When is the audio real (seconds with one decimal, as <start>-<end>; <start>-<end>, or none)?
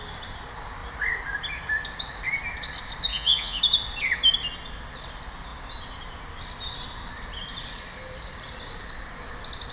0.0-3.1; 3.6-9.7